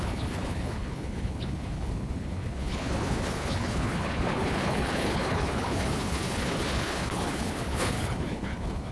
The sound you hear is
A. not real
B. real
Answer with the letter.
A